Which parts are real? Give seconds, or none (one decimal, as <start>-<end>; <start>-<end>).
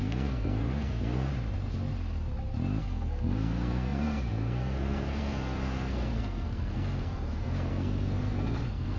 1.3-2.8